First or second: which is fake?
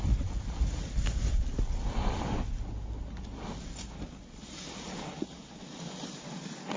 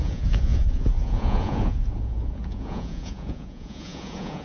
second